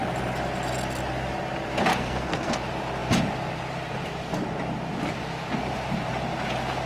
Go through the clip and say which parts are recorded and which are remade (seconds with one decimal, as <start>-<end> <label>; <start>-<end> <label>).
0.0-1.9 recorded; 1.9-2.6 remade; 2.6-6.9 recorded